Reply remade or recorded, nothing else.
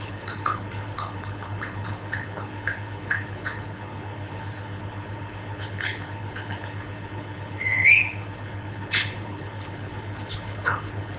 remade